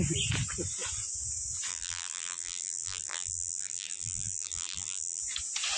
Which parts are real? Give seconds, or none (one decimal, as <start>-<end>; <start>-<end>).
0.0-1.7; 5.2-5.8